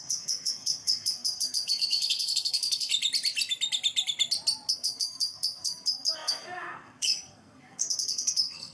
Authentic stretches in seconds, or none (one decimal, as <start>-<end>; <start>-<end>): 2.9-4.7